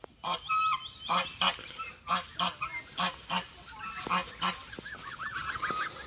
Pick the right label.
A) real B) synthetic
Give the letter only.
A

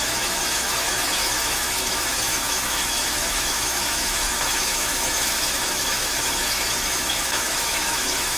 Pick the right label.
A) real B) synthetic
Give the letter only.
B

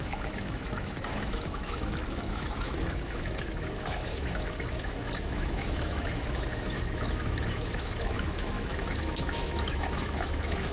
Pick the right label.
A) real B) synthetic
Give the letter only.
B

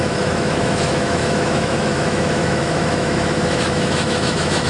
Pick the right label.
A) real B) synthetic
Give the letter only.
B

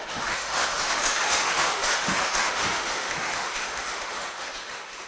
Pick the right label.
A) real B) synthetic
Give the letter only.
B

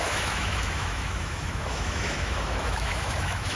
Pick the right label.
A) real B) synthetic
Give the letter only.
B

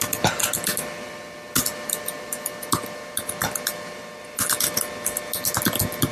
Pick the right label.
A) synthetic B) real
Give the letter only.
B